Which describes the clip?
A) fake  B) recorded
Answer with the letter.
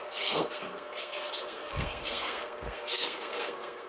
A